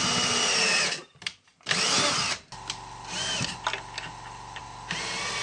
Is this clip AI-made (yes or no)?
no